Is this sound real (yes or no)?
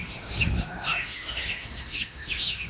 no